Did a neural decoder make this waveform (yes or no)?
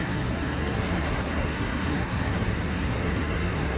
yes